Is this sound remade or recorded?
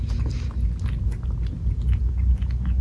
recorded